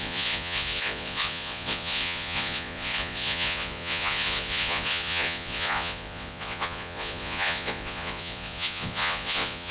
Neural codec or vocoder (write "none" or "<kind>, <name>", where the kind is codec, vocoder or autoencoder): vocoder, Vocos